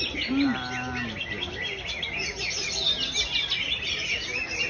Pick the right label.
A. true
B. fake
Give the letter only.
A